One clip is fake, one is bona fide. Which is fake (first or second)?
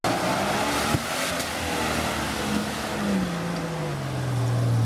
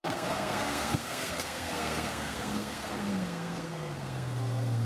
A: second